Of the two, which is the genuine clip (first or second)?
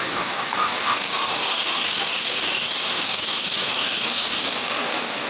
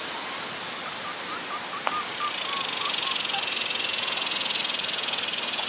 second